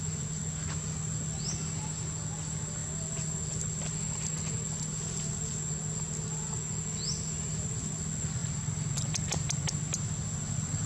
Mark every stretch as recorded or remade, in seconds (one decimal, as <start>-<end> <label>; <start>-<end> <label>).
0.0-10.9 recorded